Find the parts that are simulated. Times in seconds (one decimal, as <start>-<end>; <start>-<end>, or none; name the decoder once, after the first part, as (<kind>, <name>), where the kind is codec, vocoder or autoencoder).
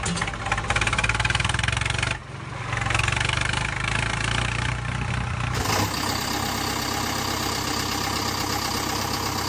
none